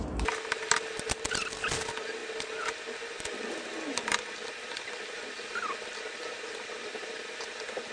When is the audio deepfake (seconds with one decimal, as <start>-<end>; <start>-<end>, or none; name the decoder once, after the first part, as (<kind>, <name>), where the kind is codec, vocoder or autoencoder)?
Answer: none